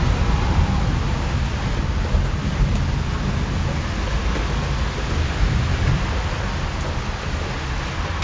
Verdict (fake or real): real